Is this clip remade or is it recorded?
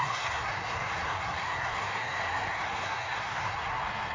remade